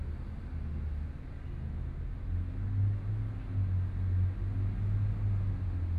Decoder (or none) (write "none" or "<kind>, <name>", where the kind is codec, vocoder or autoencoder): none